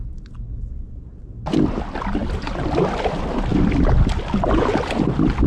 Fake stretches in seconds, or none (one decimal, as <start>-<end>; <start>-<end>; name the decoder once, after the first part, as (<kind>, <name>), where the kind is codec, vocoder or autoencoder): none